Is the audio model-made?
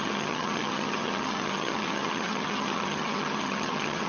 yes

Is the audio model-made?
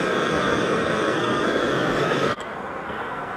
yes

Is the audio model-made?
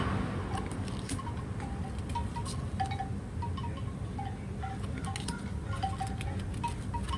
no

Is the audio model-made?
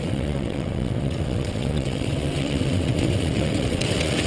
yes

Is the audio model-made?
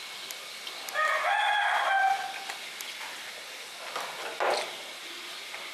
no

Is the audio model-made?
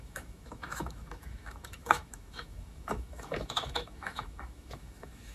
yes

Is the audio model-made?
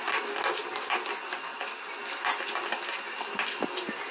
no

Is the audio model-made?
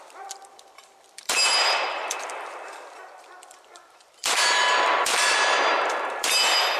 yes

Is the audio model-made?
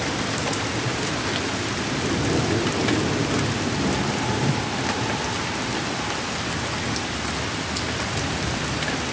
no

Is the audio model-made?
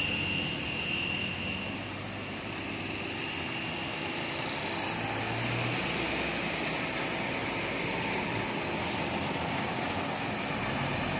no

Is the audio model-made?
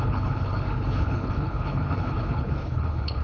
yes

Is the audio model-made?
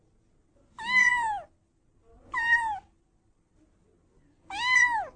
no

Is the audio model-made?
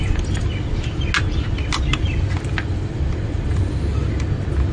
no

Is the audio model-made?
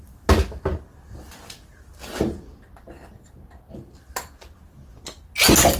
no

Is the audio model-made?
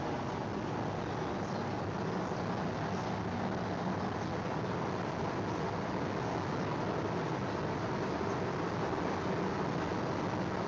no